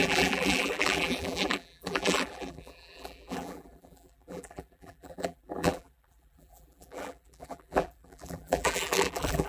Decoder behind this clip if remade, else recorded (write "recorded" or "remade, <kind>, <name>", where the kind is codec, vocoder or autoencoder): remade, vocoder, BigVGAN v2